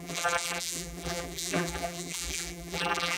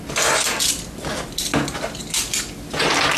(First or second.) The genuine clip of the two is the second